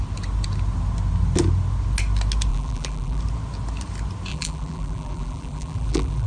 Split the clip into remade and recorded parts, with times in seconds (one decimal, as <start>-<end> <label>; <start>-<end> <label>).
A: 0.0-2.5 recorded; 2.5-3.2 remade; 3.2-4.3 recorded; 4.3-6.3 remade